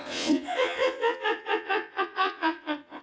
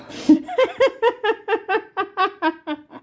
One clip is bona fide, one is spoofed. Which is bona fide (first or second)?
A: second